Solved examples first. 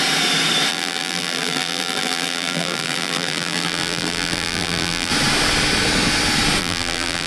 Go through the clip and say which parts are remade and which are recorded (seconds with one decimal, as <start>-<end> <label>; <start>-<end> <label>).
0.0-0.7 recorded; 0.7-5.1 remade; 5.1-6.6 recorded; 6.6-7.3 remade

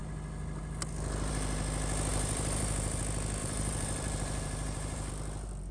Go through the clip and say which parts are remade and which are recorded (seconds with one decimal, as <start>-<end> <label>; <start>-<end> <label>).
0.0-2.1 recorded; 2.1-3.0 remade; 3.0-3.4 recorded; 3.4-5.1 remade; 5.1-5.7 recorded

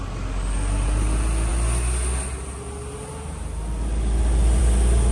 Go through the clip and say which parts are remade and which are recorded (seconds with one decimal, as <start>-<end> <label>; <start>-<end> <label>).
0.0-5.1 recorded

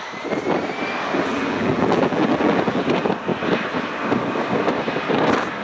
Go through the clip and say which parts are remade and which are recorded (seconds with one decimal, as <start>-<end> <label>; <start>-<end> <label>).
0.0-1.3 recorded; 1.3-2.8 remade; 2.8-5.6 recorded

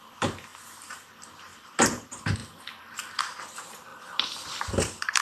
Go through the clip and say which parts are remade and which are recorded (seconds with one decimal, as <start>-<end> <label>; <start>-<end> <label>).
0.0-1.5 remade; 1.5-2.0 recorded; 2.0-2.4 remade; 2.4-3.2 recorded; 3.2-5.2 remade